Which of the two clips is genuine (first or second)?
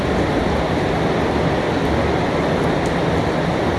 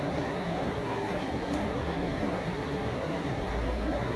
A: first